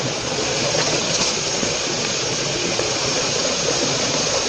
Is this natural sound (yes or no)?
no